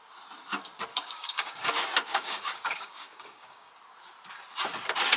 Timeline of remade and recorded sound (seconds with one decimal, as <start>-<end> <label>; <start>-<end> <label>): 0.0-0.9 recorded; 0.9-1.7 remade; 1.7-2.1 recorded; 2.1-3.7 remade; 3.7-5.2 recorded